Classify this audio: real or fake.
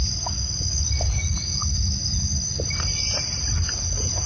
real